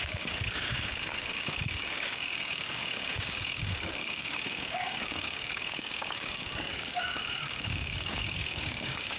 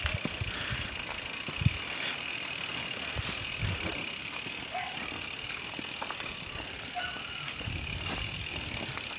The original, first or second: second